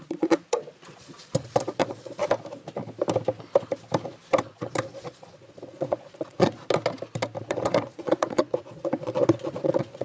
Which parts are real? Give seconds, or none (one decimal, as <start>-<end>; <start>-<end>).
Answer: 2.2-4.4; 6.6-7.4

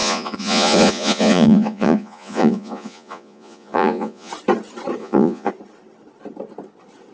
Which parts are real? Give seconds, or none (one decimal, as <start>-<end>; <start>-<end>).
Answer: 4.3-5.0; 5.5-7.1

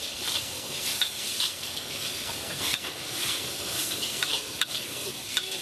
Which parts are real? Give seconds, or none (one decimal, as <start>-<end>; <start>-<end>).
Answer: none

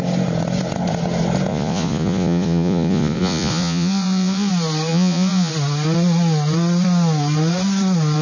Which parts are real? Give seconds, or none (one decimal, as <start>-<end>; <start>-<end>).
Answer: 0.0-1.5; 4.5-4.9; 5.5-8.2

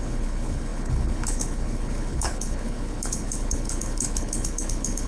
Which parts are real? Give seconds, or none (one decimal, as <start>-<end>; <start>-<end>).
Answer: none

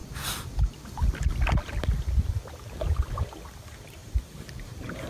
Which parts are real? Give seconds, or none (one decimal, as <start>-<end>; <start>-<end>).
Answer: 0.0-4.0

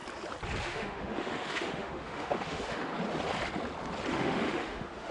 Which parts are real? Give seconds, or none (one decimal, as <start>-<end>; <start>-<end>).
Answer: 0.0-0.6; 2.9-4.1

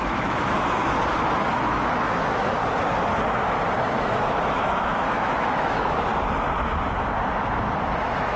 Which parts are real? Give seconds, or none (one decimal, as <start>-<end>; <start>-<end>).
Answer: 0.8-1.6; 2.6-4.0; 6.1-8.0